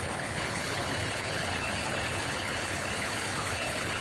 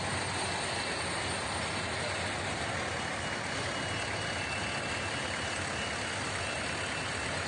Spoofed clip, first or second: first